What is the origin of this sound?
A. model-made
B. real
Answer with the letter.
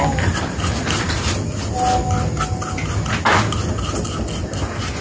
B